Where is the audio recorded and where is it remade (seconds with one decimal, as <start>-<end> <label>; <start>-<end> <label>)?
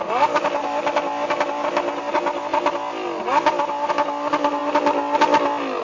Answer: 0.0-5.8 recorded